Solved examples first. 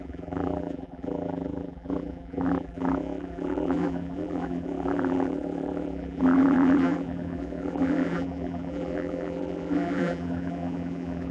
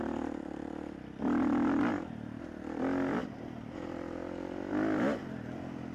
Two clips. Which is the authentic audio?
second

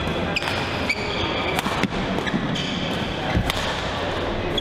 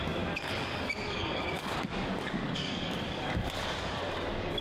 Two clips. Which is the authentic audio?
first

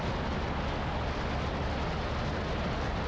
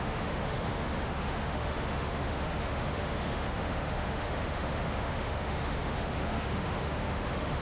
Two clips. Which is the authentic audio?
first